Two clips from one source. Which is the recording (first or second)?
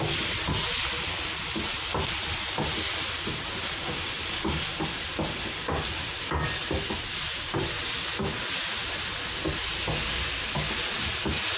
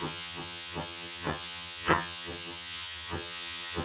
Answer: first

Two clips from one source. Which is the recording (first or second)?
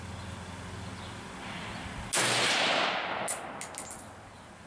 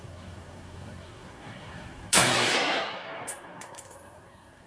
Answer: first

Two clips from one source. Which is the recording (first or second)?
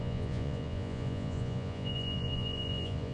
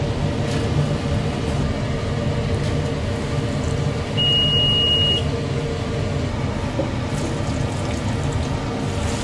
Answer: second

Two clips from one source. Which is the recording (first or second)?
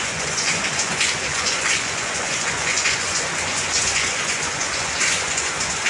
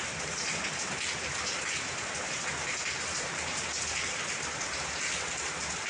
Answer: second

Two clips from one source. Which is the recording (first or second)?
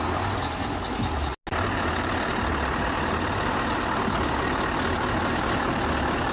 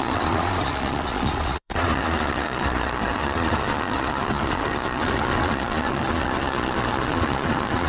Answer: first